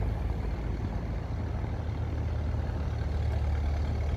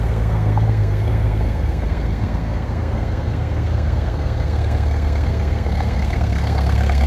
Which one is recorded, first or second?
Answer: first